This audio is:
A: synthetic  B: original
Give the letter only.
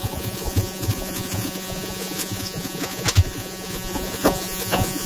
A